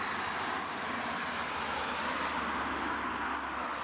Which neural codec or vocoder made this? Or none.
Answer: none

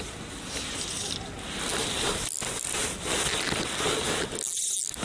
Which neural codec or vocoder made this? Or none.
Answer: none